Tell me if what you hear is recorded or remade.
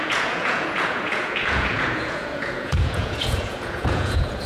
remade